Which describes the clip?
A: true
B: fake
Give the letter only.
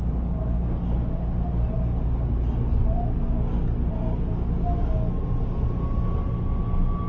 A